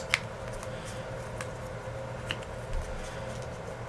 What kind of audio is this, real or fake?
real